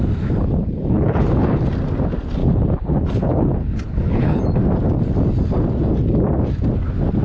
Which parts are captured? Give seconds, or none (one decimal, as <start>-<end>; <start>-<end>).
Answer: 0.0-0.4; 1.7-2.4; 4.4-7.2